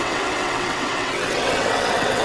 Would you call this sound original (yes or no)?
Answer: no